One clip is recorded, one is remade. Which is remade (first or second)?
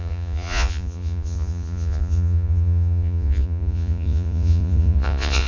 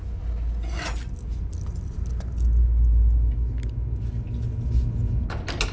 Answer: first